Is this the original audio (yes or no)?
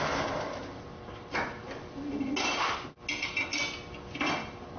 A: yes